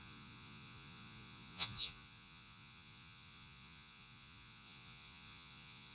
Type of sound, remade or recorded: remade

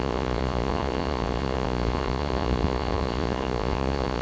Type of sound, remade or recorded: remade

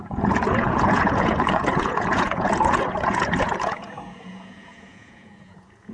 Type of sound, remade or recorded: remade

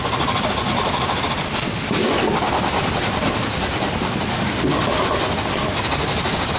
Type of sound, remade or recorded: recorded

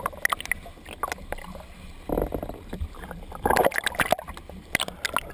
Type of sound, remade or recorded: recorded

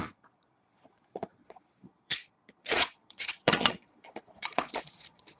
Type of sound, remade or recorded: remade